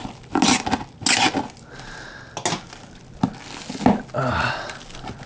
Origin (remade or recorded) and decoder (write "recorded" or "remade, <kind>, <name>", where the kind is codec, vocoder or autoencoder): recorded